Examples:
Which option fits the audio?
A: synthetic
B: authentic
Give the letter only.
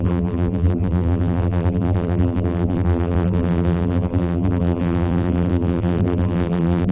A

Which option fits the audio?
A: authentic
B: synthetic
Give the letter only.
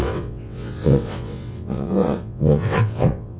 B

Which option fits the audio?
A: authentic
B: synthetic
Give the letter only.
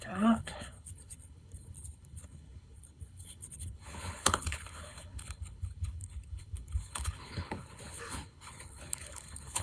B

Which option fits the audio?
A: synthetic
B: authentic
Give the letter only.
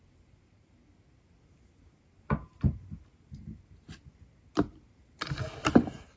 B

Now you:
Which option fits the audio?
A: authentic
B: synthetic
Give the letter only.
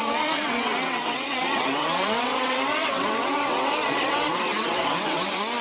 B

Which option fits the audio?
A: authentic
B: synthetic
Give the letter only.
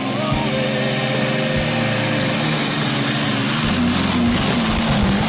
A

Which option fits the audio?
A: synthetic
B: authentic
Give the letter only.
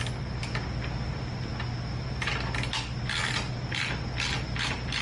B